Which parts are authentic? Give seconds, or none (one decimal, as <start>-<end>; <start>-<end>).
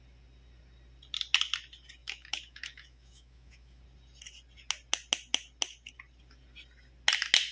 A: 0.0-2.0; 3.8-7.5